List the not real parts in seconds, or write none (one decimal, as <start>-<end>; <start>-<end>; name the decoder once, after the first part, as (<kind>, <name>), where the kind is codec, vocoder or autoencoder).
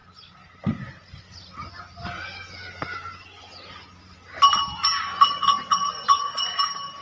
5.1-6.6 (vocoder, Vocos)